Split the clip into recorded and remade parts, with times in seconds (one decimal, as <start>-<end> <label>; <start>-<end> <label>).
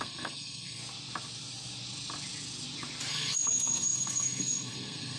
0.0-0.8 remade; 0.8-3.1 recorded; 3.1-5.2 remade